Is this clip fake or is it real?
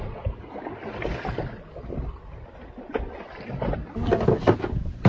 real